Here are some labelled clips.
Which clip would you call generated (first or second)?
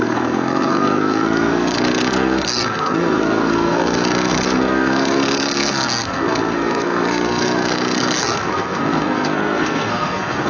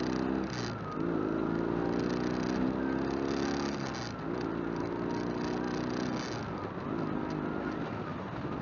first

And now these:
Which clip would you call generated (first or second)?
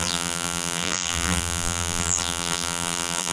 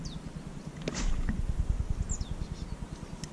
first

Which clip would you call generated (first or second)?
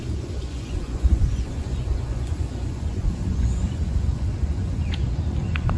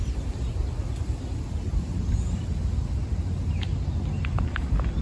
first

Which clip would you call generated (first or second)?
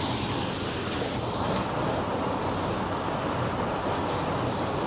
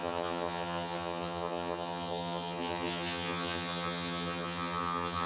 second